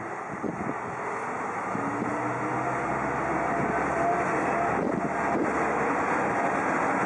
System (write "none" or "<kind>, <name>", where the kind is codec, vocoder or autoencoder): none